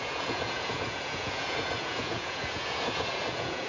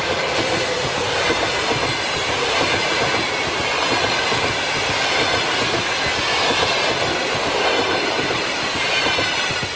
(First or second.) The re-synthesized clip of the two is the first